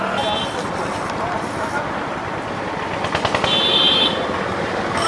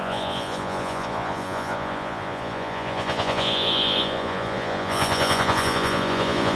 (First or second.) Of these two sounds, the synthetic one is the second